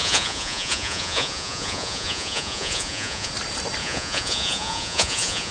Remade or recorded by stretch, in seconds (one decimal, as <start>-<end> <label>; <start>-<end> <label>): 0.0-3.3 remade; 3.3-3.8 recorded; 3.8-5.5 remade